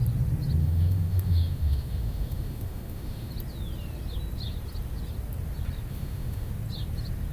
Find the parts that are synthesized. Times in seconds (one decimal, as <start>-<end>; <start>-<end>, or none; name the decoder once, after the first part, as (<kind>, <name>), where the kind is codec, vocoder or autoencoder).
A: 0.6-3.3 (autoencoder, DAC-VAE); 5.9-6.5

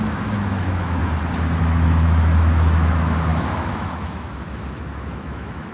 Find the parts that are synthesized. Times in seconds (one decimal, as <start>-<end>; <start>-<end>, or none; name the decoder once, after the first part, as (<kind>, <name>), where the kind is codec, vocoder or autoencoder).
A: 0.0-1.0 (autoencoder, DAC-VAE); 1.6-5.7

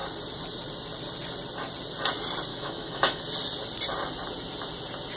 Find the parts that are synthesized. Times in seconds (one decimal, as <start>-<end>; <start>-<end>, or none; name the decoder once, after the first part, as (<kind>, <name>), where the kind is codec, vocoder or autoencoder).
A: 2.5-3.2 (autoencoder, DAC-VAE)

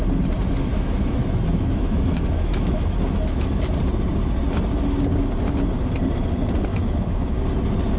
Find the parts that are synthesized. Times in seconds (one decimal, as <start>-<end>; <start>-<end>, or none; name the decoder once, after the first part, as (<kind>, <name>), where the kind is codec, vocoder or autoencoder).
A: 0.7-3.5 (autoencoder, DAC-VAE); 6.7-7.4

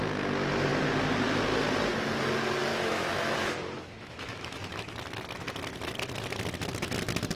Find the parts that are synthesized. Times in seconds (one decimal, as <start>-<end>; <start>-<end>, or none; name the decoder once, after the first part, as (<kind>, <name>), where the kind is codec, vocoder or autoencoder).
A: 2.7-4.9 (autoencoder, DAC-VAE)